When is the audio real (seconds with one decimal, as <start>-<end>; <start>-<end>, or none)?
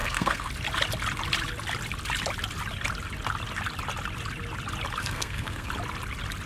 0.5-5.0; 5.7-6.5